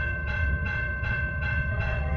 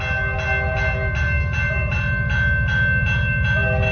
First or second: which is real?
second